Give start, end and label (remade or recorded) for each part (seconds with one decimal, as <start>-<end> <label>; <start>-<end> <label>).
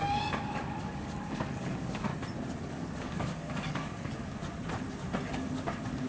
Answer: 0.0-2.1 remade; 2.1-2.7 recorded; 2.7-4.4 remade; 4.4-5.3 recorded; 5.3-6.1 remade